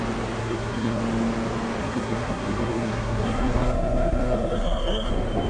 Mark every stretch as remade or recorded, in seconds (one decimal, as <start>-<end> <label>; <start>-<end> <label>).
0.0-0.4 recorded; 0.4-1.0 remade; 1.0-1.8 recorded; 1.8-5.1 remade; 5.1-5.5 recorded